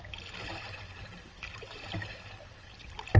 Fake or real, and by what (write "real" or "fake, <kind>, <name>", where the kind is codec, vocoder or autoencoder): real